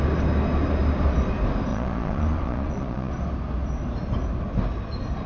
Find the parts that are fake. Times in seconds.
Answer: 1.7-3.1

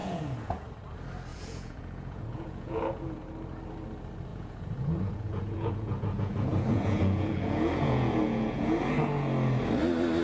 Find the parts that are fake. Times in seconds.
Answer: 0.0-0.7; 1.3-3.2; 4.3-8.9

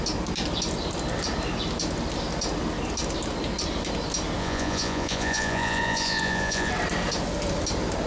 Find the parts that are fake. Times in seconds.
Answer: 4.4-6.7